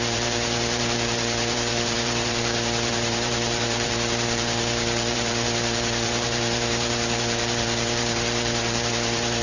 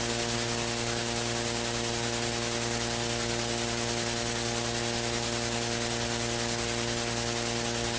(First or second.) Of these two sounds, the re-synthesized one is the first